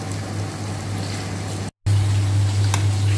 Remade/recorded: recorded